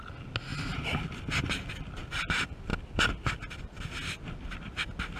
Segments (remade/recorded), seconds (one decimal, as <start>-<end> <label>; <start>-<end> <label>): 0.0-0.5 recorded; 0.5-1.2 remade; 1.2-5.2 recorded